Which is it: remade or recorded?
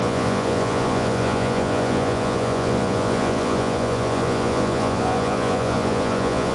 remade